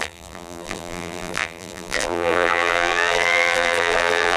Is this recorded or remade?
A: remade